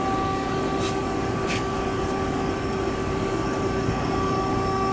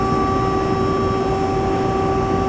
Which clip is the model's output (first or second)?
first